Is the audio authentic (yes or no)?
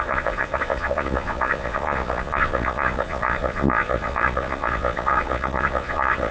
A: no